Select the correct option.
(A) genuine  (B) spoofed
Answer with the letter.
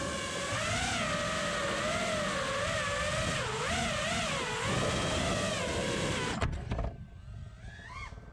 A